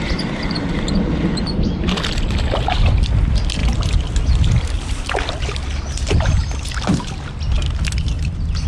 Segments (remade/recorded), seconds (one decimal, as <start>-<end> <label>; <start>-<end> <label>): 0.0-8.7 recorded